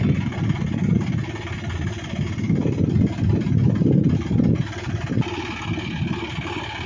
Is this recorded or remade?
recorded